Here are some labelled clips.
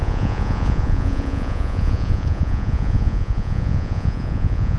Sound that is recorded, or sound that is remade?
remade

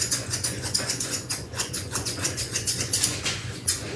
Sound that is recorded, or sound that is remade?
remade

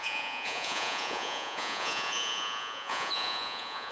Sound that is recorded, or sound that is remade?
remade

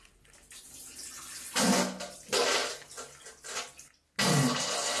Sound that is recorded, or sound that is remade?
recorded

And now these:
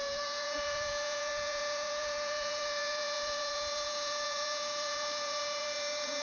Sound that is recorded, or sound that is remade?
remade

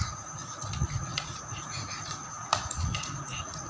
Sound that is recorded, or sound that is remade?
remade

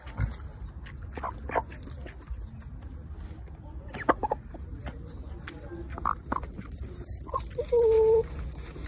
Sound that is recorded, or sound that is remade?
recorded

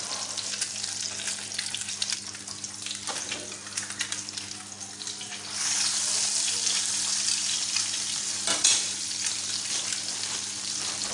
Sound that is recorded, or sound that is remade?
recorded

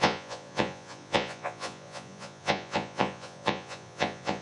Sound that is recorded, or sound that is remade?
remade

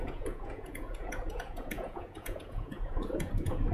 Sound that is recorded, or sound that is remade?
remade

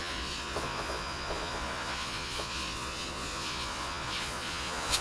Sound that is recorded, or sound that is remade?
remade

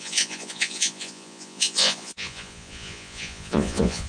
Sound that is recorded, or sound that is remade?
remade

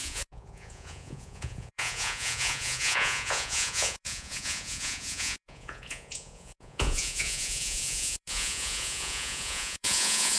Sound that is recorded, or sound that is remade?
remade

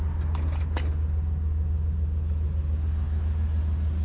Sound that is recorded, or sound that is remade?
recorded